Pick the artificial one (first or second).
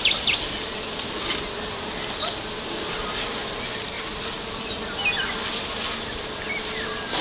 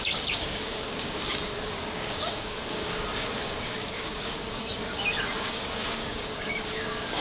second